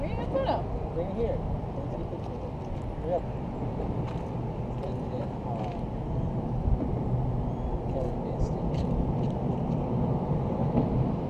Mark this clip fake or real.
real